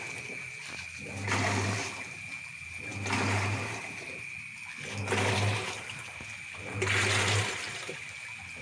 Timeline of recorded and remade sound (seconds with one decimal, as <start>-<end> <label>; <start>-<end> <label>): 0.0-8.6 recorded

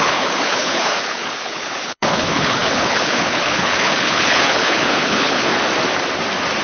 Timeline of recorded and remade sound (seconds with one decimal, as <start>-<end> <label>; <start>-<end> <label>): 0.0-5.5 remade; 5.5-6.6 recorded